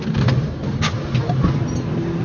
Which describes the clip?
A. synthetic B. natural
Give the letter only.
B